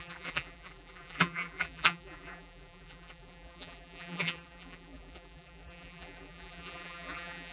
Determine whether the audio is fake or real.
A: fake